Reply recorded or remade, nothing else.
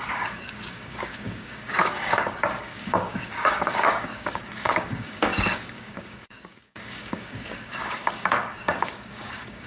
remade